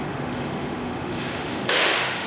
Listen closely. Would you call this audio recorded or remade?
remade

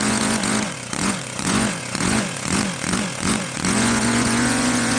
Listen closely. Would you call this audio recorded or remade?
remade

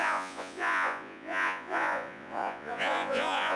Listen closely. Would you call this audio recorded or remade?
remade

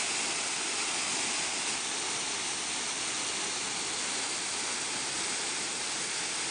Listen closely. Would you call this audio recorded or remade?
recorded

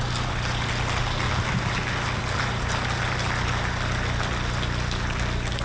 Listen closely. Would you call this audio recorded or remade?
recorded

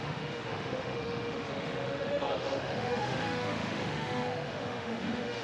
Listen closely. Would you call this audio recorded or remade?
remade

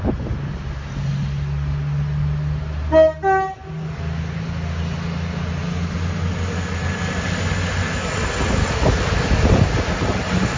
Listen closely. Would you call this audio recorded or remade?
recorded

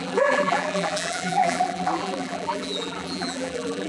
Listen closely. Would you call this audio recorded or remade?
remade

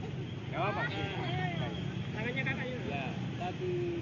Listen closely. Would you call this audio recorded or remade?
recorded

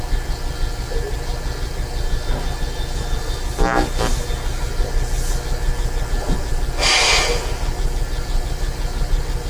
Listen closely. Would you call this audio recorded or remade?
recorded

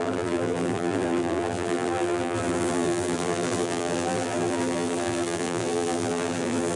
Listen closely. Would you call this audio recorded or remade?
remade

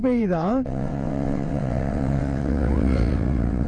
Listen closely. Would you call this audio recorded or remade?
remade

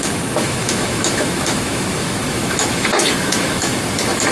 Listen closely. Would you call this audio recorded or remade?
remade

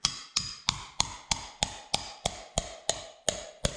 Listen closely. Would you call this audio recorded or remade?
recorded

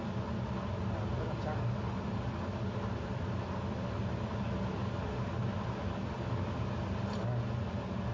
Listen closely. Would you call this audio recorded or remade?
recorded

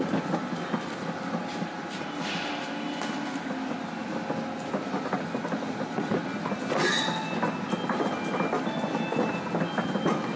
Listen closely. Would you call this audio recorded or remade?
recorded